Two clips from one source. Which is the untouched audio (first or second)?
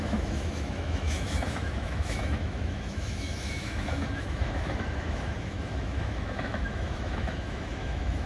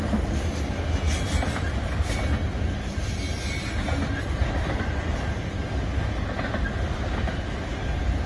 second